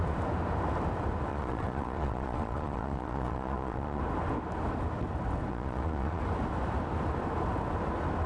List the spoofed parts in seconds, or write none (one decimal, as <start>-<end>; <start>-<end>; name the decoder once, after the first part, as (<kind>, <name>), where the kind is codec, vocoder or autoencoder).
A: 1.3-4.0 (vocoder, Vocos); 5.5-6.2